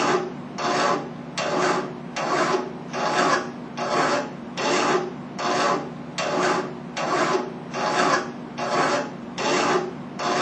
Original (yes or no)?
yes